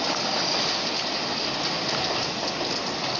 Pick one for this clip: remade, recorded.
recorded